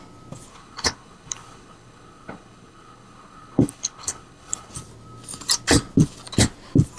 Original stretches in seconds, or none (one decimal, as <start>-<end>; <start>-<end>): 0.0-0.5; 4.7-7.0